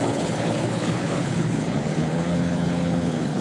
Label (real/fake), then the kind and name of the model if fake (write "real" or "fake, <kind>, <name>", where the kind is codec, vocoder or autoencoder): fake, codec, HILCodec